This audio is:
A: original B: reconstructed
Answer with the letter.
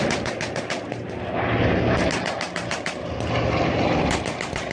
A